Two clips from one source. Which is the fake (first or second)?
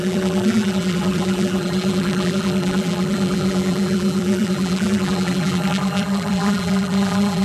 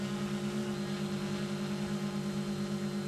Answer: first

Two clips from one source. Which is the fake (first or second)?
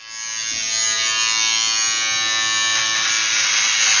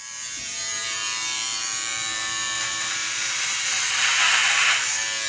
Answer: second